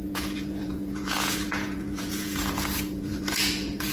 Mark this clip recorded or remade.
remade